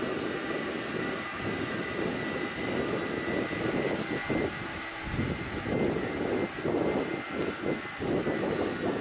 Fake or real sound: real